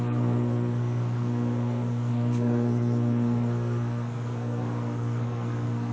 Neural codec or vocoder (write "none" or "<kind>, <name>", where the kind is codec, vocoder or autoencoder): codec, SNAC